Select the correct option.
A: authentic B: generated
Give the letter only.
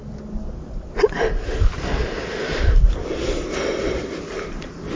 A